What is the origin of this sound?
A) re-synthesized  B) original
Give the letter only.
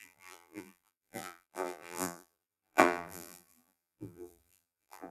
A